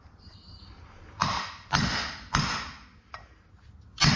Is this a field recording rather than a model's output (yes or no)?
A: yes